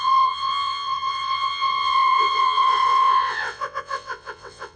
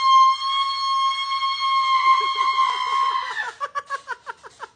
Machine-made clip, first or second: first